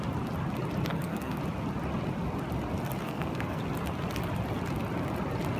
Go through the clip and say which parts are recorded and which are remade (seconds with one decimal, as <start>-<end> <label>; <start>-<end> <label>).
0.0-0.9 recorded; 0.9-1.4 remade; 1.4-3.0 recorded; 3.0-3.6 remade; 3.6-5.6 recorded